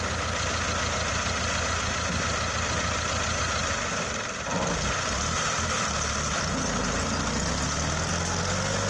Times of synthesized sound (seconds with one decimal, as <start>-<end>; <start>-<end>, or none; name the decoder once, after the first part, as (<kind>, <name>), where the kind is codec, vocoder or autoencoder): none